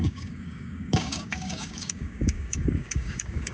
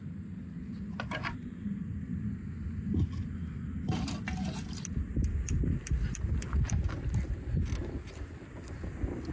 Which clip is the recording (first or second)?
second